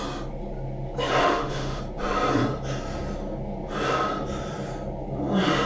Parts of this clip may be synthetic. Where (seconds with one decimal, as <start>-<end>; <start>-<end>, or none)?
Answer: 1.2-1.8